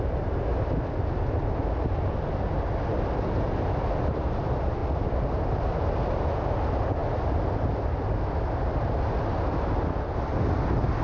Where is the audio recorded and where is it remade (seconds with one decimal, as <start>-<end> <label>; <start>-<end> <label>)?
0.0-11.0 recorded